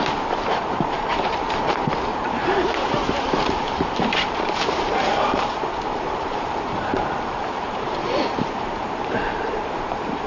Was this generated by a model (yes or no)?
yes